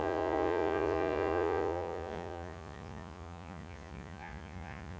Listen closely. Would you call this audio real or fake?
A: fake